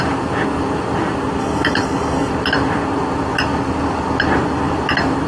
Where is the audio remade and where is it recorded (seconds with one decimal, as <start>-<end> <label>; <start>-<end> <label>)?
0.0-1.4 recorded; 1.4-2.3 remade; 2.3-5.3 recorded